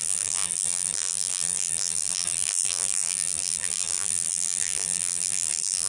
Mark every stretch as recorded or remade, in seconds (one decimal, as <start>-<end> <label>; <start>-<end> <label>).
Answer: 0.0-5.9 remade